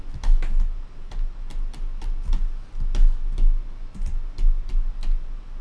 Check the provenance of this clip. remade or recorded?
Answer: recorded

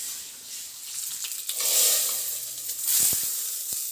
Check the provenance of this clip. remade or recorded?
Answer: remade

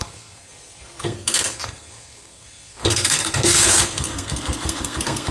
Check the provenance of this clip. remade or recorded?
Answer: remade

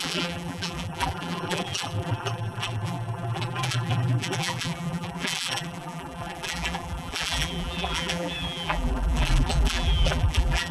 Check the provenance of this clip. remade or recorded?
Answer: remade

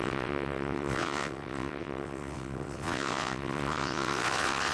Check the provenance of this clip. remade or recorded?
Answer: remade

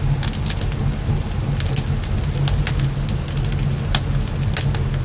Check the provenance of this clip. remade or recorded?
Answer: recorded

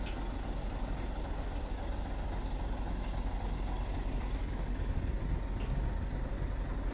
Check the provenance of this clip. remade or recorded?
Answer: recorded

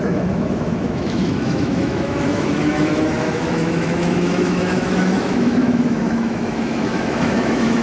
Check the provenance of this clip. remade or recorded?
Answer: remade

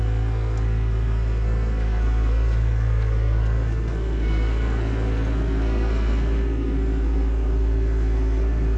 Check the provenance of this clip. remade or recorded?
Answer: remade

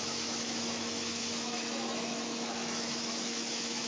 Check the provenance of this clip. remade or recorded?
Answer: remade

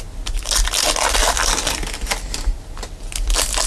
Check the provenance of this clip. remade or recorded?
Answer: recorded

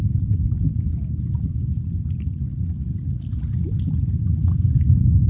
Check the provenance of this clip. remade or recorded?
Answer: recorded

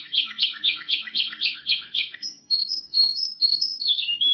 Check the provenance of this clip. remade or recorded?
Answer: remade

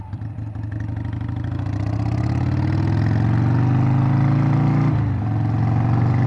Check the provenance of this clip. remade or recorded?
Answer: recorded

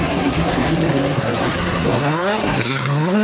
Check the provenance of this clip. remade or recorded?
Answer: remade